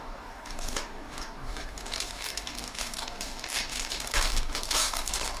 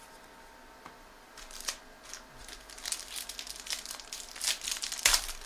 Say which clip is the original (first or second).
second